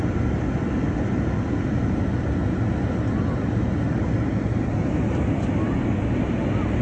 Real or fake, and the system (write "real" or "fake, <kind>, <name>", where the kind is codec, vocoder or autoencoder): real